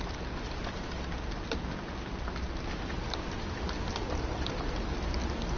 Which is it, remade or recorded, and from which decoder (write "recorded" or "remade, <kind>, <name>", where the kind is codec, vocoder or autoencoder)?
recorded